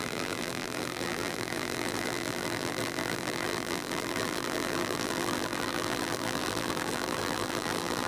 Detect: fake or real fake